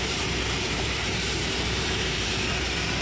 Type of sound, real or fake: fake